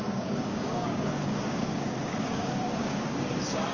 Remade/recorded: remade